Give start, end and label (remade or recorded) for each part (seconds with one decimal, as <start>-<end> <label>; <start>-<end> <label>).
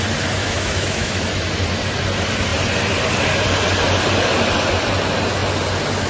0.0-0.4 recorded; 0.4-1.2 remade; 1.2-6.1 recorded